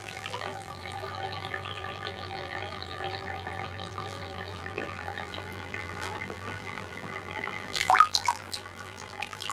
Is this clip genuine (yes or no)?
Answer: no